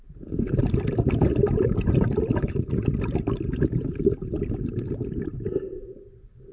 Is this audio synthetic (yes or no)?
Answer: no